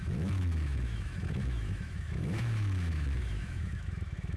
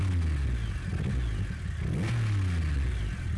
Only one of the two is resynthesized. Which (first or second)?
first